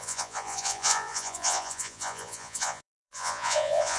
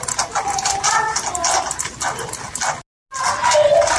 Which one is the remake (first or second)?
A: first